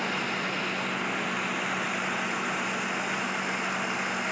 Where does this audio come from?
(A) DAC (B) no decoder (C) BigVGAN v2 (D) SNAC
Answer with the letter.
B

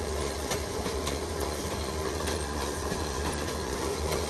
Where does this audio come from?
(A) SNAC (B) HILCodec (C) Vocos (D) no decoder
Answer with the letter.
C